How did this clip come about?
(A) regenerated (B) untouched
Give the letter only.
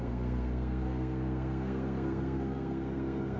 A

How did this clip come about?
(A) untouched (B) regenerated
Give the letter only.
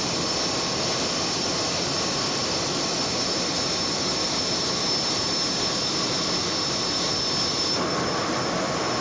A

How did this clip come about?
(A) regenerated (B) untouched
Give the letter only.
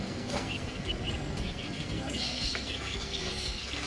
A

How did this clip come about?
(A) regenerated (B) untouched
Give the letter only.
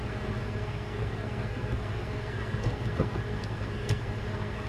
A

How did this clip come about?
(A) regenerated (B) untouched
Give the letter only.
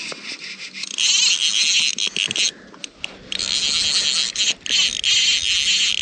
B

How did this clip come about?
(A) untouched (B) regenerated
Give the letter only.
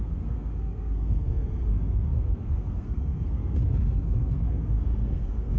B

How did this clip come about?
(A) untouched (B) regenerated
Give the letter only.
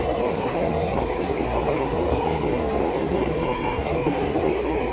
B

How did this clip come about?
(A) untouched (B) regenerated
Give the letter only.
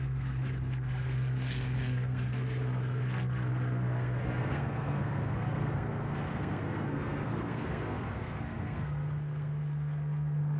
B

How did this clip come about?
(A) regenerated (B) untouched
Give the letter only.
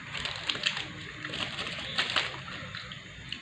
B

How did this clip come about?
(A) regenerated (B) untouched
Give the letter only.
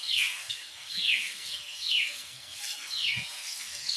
A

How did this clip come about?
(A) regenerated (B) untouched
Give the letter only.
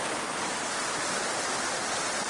B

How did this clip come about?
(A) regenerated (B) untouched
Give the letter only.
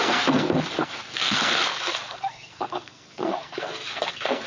A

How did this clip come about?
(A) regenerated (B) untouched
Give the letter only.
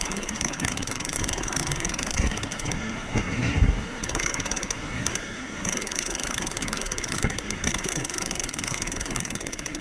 A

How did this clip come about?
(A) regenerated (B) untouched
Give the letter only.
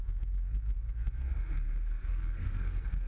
A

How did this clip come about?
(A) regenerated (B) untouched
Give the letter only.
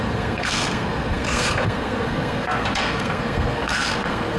A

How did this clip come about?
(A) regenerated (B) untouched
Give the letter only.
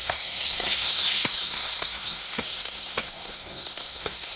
A